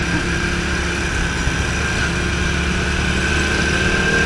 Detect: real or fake real